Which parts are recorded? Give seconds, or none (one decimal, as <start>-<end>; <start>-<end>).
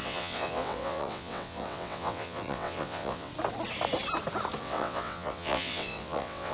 3.3-4.6